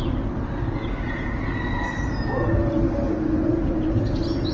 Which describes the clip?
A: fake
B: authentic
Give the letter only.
B